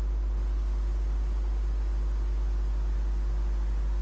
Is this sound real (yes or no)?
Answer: yes